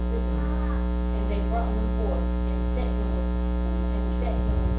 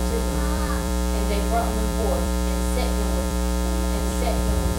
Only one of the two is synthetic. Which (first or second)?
second